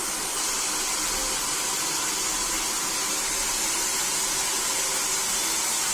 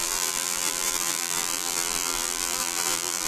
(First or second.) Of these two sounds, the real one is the first